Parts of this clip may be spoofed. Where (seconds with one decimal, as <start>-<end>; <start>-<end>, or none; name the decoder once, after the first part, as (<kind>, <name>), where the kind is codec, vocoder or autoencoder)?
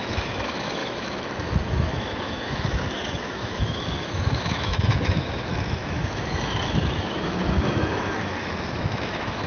0.0-9.5 (autoencoder, DAC-VAE)